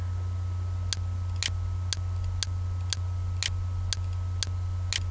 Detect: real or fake real